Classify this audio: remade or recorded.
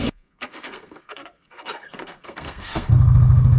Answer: remade